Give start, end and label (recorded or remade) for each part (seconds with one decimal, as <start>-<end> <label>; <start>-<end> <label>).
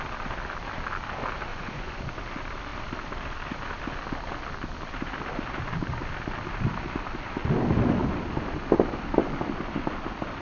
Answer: 0.0-1.5 recorded; 1.5-2.0 remade; 2.0-10.4 recorded